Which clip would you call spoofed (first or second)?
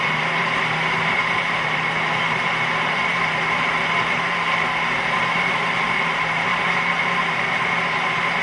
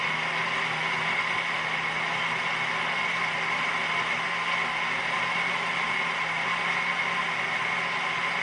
first